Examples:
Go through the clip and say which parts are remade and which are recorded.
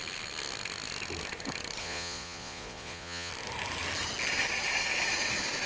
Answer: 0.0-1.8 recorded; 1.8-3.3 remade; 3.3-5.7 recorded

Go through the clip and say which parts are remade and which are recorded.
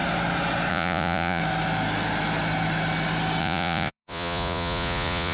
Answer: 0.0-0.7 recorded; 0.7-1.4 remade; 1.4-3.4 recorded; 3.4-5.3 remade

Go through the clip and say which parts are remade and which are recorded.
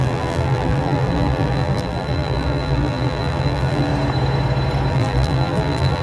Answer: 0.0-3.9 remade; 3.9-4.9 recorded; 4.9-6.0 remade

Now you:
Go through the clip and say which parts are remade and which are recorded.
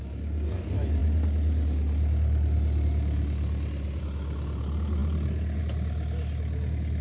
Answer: 0.0-7.0 recorded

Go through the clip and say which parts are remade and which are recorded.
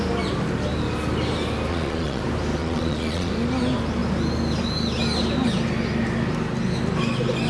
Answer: 0.0-1.7 recorded; 1.7-2.2 remade; 2.2-2.6 recorded; 2.6-3.3 remade; 3.3-7.5 recorded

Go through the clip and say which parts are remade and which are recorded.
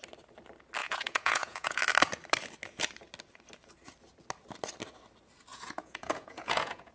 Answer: 0.0-0.8 recorded; 0.8-1.8 remade; 1.8-5.5 recorded; 5.5-6.9 remade